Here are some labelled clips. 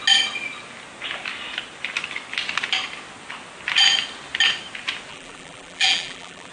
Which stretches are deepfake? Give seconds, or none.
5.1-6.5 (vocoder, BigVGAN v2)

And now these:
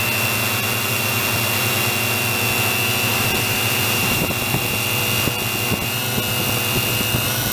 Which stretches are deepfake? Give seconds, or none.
3.1-4.3 (vocoder, BigVGAN v2)